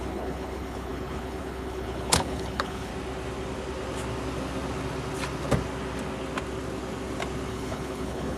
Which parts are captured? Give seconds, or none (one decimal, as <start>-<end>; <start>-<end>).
2.9-7.5